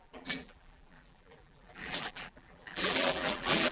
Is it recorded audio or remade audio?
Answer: remade